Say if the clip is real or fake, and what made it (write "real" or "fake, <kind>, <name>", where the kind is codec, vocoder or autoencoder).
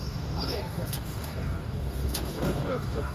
fake, codec, DAC